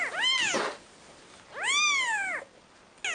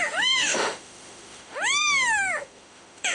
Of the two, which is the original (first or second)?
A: first